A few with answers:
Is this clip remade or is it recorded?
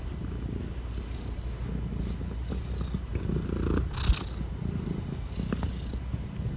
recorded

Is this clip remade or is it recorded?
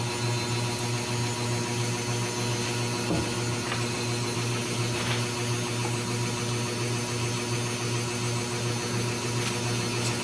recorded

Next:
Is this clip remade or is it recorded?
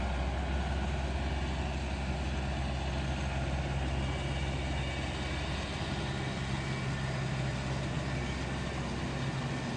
recorded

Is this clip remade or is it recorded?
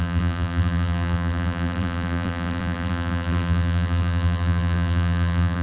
remade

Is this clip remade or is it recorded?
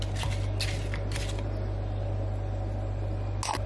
recorded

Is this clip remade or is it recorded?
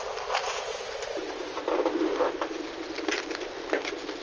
recorded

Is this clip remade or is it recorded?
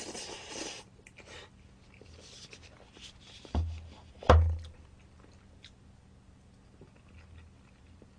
recorded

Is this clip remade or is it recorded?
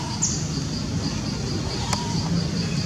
recorded